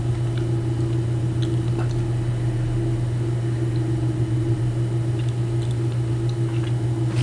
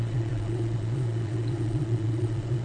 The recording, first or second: first